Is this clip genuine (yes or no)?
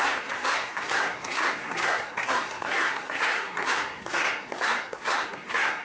no